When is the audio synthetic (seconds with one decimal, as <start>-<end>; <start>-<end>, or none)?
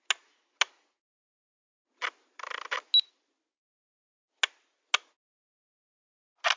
none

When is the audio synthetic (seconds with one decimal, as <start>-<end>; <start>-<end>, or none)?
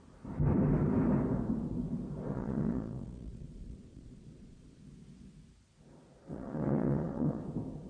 2.3-4.8; 6.2-7.4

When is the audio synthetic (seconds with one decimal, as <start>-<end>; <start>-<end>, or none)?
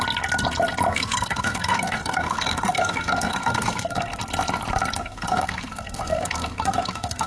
0.9-4.2; 5.0-7.3